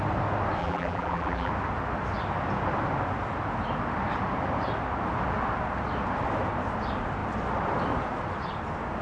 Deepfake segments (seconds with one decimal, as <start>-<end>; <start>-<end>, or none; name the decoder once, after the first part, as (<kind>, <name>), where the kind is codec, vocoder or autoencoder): 0.6-1.5 (vocoder, BigVGAN v2)